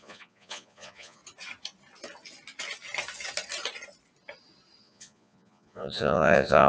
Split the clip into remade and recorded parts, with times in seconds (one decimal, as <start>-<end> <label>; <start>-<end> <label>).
0.0-1.2 remade; 1.2-4.8 recorded; 4.8-6.7 remade